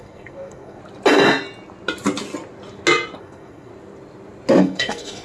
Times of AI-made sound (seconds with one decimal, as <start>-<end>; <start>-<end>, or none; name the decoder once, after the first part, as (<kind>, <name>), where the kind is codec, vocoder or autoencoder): 0.0-0.8 (codec, SNAC); 3.2-3.7; 4.6-5.2